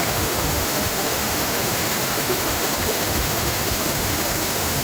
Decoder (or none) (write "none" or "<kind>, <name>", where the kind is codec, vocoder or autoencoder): autoencoder, DAC-VAE